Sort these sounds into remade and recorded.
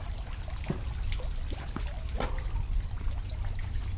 recorded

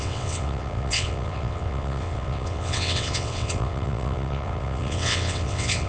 remade